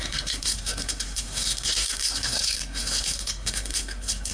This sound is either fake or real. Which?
fake